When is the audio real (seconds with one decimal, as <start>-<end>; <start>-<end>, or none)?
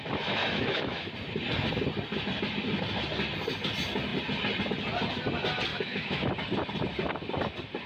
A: 0.0-0.4; 1.1-5.7; 6.3-7.9